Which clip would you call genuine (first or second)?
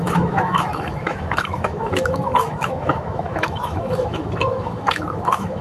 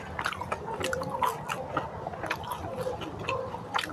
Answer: second